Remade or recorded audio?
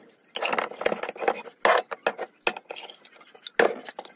recorded